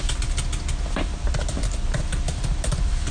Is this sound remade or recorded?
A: recorded